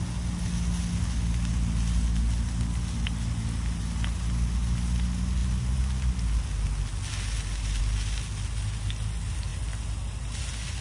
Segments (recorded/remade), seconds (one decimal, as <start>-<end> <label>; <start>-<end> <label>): 0.0-10.8 recorded